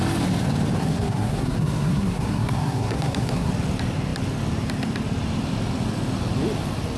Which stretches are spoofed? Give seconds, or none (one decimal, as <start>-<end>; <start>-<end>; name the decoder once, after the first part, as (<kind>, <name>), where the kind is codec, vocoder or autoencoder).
0.8-3.5 (codec, SNAC)